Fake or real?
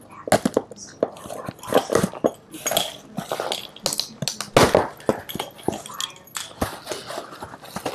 real